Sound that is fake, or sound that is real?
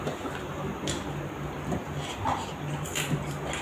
real